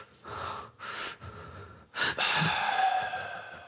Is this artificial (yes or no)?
no